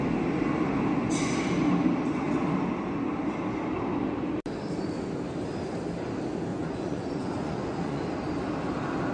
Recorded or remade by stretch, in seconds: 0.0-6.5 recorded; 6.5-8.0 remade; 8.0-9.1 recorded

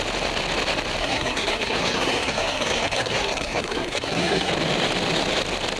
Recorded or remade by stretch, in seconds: 0.0-1.0 recorded; 1.0-4.5 remade; 4.5-5.8 recorded

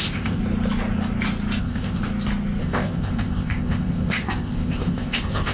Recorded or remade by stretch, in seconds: 0.0-0.4 remade; 0.4-1.6 recorded; 1.6-2.0 remade; 2.0-2.6 recorded; 2.6-5.5 remade

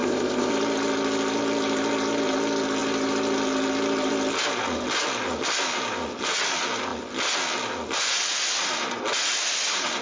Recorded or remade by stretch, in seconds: 0.0-0.5 remade; 0.5-10.0 recorded

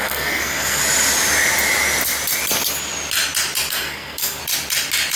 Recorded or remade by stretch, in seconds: 0.0-0.8 remade; 0.8-3.7 recorded; 3.7-4.4 remade; 4.4-5.2 recorded

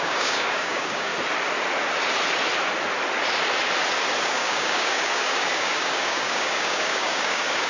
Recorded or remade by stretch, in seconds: 0.0-1.1 remade; 1.1-4.2 recorded; 4.2-7.7 remade